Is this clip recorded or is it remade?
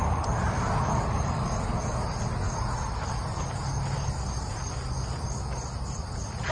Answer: recorded